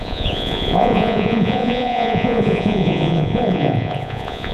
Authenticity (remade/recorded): remade